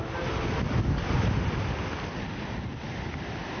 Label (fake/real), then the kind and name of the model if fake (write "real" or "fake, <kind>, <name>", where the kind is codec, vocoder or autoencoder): real